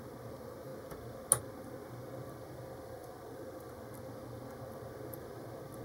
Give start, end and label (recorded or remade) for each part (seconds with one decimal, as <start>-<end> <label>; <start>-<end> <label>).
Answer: 0.0-5.8 recorded